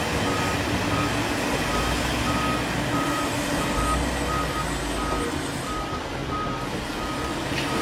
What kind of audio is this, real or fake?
real